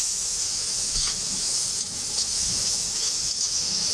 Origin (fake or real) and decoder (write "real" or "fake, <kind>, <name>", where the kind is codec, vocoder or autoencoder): fake, autoencoder, DAC-VAE